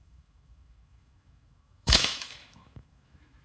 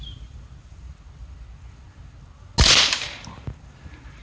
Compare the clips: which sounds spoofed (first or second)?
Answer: first